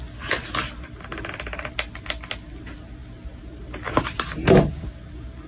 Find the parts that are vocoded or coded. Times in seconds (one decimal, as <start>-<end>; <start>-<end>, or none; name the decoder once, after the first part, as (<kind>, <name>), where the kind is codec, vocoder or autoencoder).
none